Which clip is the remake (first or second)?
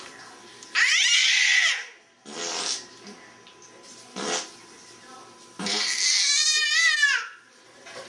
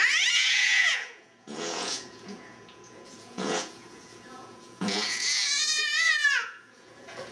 second